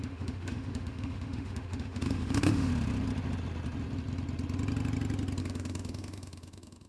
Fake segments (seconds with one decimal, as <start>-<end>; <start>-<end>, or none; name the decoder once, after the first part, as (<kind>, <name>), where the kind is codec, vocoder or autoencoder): 0.0-2.7 (autoencoder, DAC-VAE); 5.4-6.9